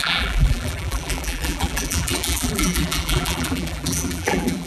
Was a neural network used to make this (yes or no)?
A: yes